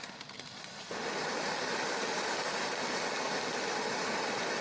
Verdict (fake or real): real